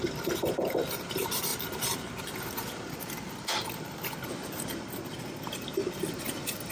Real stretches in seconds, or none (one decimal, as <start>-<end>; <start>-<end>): 0.0-6.7